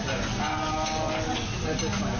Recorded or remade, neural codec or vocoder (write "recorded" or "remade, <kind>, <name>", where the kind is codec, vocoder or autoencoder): recorded